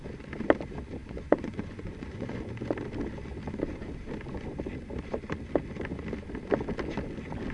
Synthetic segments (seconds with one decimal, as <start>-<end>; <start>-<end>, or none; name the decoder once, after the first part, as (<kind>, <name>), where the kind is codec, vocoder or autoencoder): 1.0-2.5 (vocoder, Vocos)